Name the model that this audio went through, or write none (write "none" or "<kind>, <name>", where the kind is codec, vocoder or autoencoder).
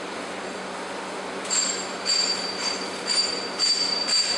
none